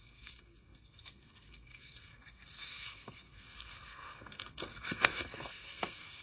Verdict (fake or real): fake